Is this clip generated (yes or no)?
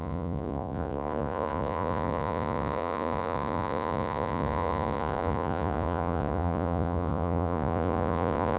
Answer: yes